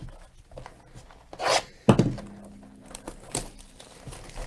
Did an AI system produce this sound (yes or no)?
no